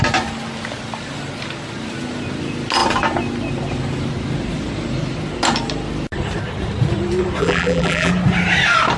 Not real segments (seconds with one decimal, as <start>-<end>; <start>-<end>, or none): 7.4-8.1